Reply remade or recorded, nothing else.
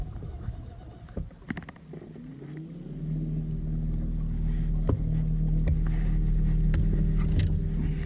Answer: recorded